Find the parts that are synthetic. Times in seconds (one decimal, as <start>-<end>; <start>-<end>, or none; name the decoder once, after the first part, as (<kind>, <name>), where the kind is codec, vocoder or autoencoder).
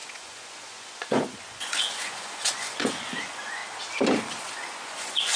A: 0.0-3.6 (vocoder, Vocos); 4.4-5.4